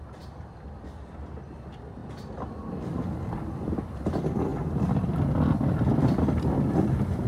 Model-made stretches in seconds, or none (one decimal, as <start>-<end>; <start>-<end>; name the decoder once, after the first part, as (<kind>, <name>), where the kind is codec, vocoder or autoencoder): 4.5-7.3 (vocoder, BigVGAN v2)